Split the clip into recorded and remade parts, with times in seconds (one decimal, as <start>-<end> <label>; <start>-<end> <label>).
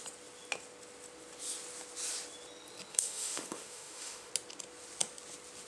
0.0-2.9 recorded; 2.9-4.3 remade; 4.3-5.7 recorded